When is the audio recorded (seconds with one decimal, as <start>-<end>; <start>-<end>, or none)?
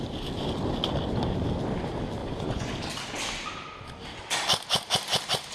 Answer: 0.0-2.2; 2.7-5.5